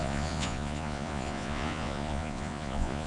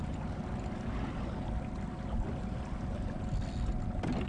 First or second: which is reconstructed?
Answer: first